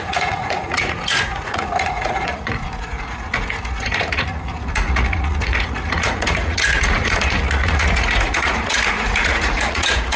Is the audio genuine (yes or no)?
no